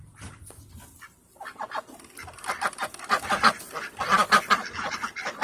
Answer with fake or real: real